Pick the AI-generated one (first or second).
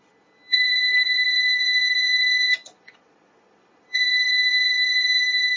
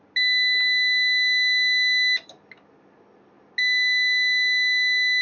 first